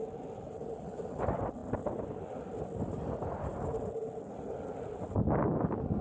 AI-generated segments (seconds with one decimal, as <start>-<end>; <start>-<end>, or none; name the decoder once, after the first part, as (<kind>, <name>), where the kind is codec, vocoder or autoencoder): none